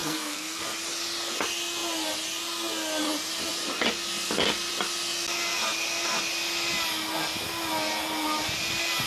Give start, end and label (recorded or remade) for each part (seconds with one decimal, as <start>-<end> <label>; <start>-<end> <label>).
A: 0.0-0.6 remade; 0.6-9.1 recorded